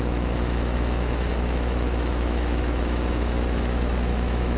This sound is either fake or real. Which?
fake